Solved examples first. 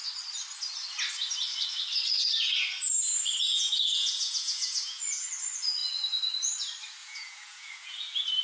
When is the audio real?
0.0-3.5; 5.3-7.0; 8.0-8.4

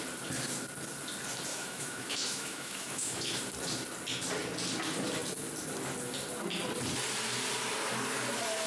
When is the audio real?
0.0-1.5; 3.4-8.7